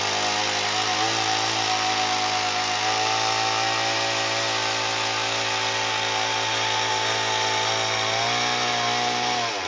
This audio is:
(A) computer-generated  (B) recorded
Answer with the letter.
B